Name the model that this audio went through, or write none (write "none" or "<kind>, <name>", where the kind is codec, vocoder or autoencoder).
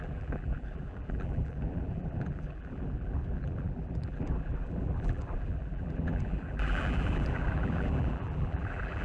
vocoder, BigVGAN v2